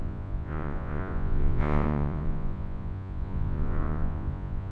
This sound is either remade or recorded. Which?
remade